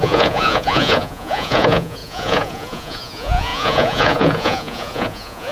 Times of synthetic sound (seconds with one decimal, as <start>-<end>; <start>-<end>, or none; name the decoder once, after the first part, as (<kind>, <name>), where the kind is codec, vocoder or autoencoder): 0.0-5.5 (vocoder, Vocos)